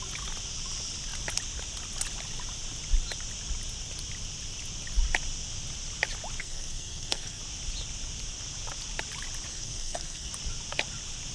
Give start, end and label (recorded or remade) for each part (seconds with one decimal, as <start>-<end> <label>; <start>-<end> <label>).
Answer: 0.0-6.4 recorded; 6.4-7.4 remade; 7.4-9.5 recorded; 9.5-10.3 remade; 10.3-11.3 recorded